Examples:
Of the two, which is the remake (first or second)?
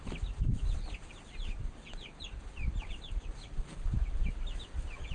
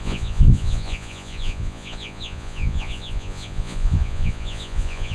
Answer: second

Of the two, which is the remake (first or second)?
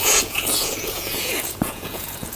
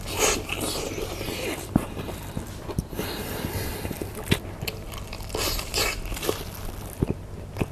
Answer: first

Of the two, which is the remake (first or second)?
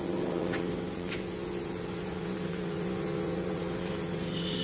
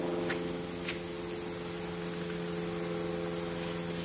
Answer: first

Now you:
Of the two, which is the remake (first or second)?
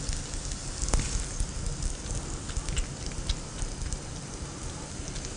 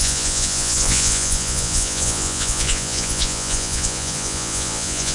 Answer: second